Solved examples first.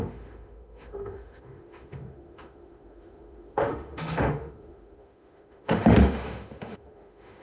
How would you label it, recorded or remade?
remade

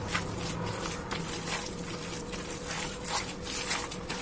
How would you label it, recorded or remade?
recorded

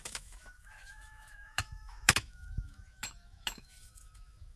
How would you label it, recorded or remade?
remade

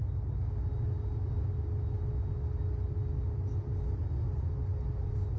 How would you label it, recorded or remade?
recorded